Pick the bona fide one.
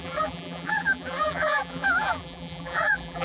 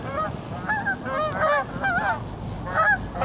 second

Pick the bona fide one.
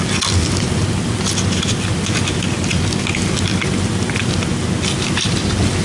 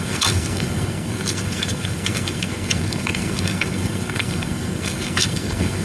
first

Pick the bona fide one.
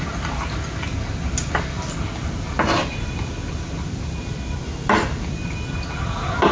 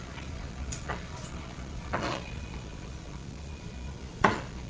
first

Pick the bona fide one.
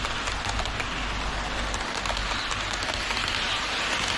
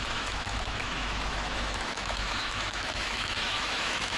first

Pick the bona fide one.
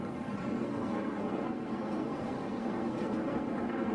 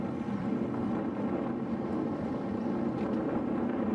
second